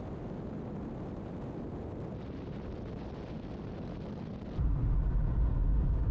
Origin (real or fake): real